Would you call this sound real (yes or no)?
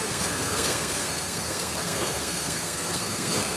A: no